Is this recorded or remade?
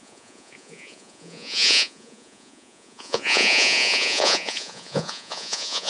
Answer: remade